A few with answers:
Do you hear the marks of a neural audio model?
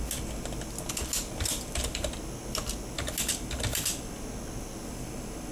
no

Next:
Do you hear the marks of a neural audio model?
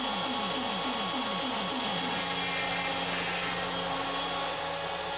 no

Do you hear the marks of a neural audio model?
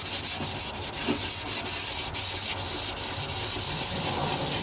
no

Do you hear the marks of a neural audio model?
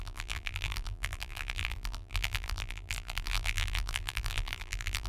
yes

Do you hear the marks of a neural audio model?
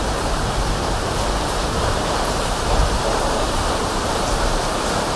yes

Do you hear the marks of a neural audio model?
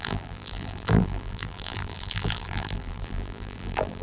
yes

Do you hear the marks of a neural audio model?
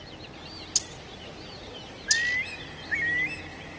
no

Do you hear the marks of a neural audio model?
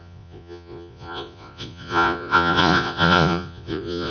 yes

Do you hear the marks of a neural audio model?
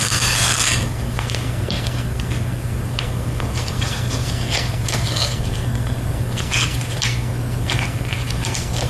yes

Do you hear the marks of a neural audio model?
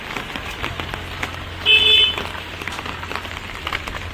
no